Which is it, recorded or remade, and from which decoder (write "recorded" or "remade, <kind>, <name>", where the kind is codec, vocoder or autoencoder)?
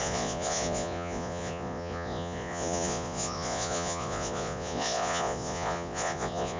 remade, vocoder, Vocos